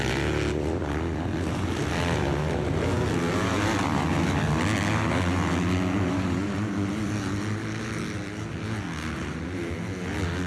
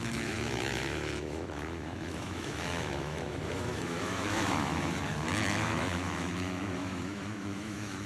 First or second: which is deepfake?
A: second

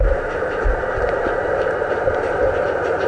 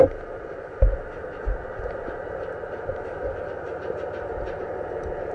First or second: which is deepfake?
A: first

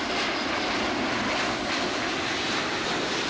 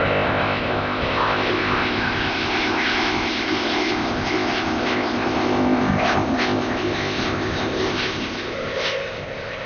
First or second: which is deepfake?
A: second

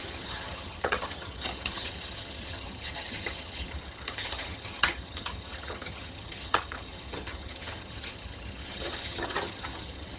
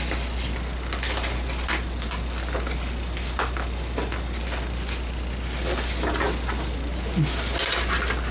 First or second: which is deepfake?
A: first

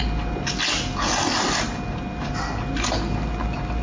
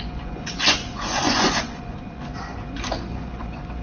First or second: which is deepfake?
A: second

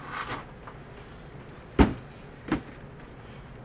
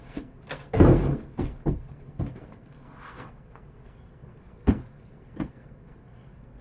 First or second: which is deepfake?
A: second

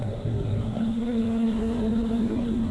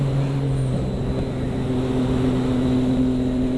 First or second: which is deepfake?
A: first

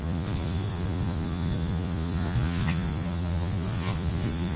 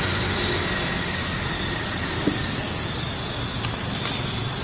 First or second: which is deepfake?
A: first